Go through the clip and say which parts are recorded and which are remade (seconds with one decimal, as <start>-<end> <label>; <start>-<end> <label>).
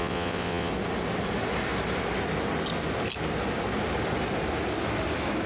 0.0-0.7 remade; 0.7-5.5 recorded